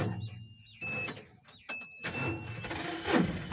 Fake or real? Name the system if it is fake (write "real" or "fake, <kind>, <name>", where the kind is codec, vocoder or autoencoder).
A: real